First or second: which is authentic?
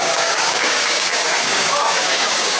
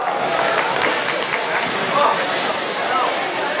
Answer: second